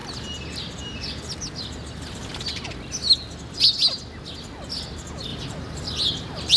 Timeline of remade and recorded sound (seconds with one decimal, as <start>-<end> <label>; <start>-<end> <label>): 0.0-5.3 recorded; 5.3-6.6 remade